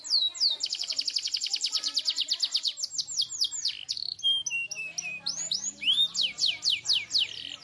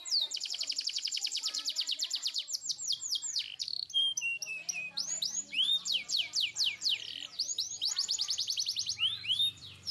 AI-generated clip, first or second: second